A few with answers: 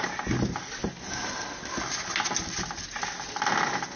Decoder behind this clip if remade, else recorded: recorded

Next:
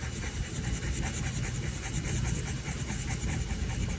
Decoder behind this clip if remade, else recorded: recorded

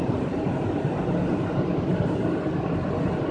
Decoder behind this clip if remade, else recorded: recorded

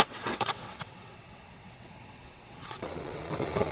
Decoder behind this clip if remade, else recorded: remade, vocoder, WaveNeXt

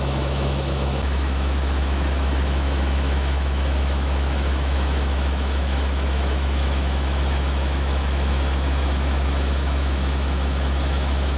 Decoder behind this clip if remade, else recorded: remade, autoencoder, DAC-VAE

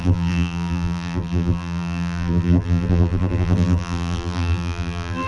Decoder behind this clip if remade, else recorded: remade, vocoder, BigVGAN v2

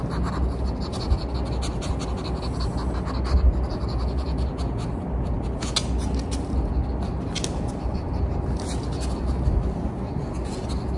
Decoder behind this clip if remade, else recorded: recorded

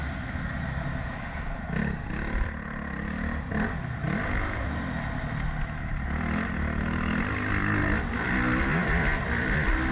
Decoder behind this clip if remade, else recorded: recorded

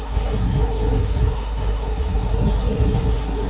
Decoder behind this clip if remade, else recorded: remade, codec, SNAC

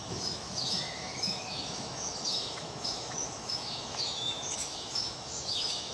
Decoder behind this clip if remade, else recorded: remade, autoencoder, DAC-VAE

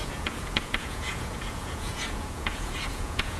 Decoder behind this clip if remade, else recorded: remade, vocoder, Vocos